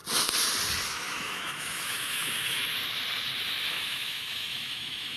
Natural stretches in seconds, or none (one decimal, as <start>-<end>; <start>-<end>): 0.0-0.9; 2.6-3.7